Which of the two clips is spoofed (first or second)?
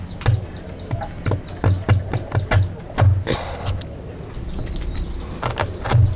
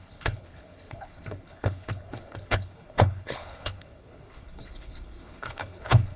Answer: second